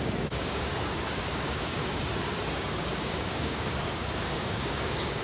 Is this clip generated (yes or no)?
yes